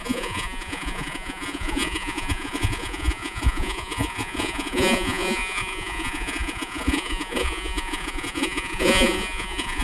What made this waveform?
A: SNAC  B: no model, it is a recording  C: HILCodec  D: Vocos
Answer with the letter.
D